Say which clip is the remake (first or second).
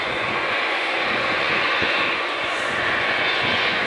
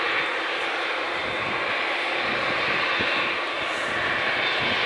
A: first